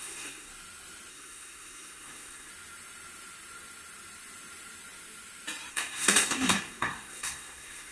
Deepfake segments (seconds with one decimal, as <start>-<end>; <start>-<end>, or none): 0.0-0.5; 1.1-2.5; 5.7-7.9